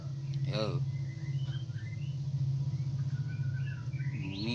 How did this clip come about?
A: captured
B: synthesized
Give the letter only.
A